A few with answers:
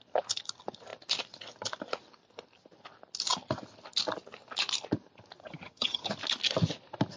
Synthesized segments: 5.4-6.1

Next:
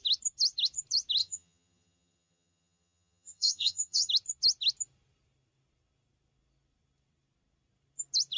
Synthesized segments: 1.2-4.1

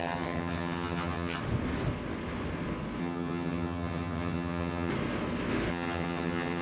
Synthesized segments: 0.0-1.4; 3.0-4.9; 5.7-6.6

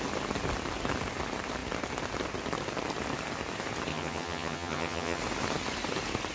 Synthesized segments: 3.9-5.2

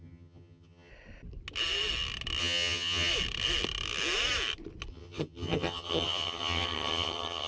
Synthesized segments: 0.0-0.9; 2.4-3.1; 4.9-7.5

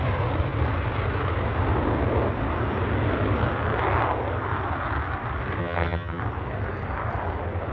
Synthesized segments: 5.6-6.2

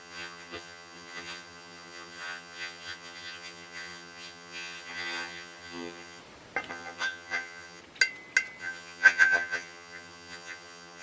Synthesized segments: 0.0-6.2; 6.7-7.8; 8.6-11.0